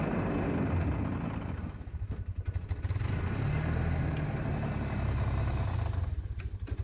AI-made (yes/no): no